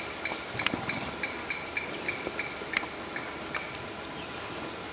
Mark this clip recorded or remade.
recorded